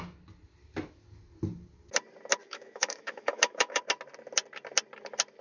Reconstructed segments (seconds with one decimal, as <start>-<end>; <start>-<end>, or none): 2.4-3.8